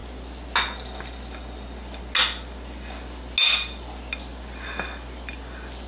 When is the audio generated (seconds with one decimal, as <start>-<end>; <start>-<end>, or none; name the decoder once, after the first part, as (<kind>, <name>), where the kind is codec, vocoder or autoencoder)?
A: none